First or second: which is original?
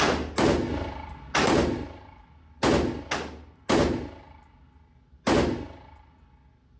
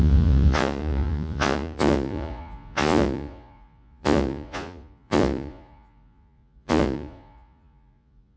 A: first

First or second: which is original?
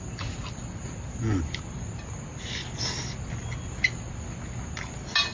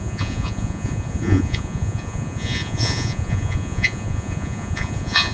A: first